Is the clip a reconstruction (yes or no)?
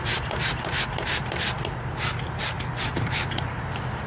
yes